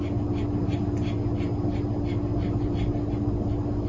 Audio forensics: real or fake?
real